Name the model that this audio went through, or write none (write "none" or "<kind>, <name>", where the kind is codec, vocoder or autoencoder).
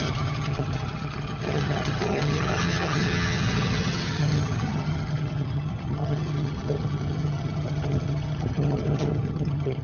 vocoder, HiFi-GAN